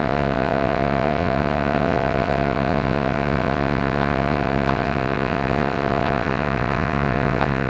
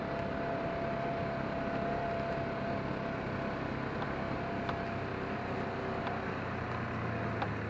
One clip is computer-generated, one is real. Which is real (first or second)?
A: second